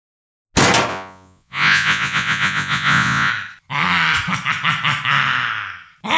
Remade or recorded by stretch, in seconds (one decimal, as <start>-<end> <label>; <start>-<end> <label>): 0.0-0.9 recorded; 0.9-3.3 remade; 3.3-6.2 recorded